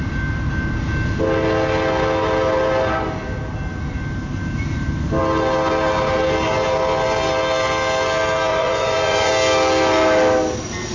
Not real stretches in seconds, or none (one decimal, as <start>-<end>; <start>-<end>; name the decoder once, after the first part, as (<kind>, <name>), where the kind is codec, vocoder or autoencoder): 8.5-9.3 (vocoder, Vocos)